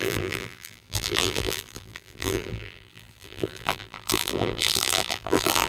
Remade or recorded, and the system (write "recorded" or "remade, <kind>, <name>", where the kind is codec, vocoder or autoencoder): remade, vocoder, BigVGAN v2